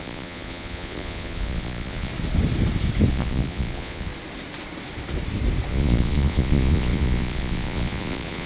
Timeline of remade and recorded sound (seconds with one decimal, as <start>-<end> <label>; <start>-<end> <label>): 0.0-2.1 remade; 2.1-3.1 recorded; 3.1-4.1 remade; 4.1-5.7 recorded; 5.7-8.5 remade